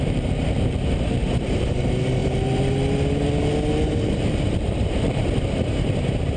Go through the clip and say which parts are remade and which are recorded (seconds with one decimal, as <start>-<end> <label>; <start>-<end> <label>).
0.0-2.2 remade; 2.2-3.8 recorded; 3.8-6.4 remade